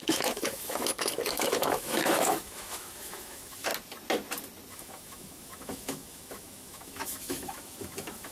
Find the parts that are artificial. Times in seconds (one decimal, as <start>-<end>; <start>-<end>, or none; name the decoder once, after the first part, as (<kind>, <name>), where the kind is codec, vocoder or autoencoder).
0.0-3.7 (autoencoder, DAC-VAE); 4.7-8.3